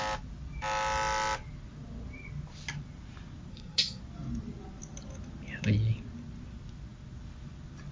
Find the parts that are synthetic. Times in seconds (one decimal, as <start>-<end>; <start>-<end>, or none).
3.5-4.0